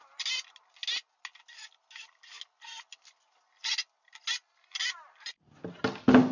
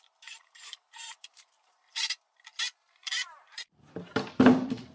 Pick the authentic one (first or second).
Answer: first